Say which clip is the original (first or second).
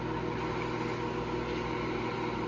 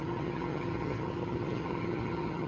first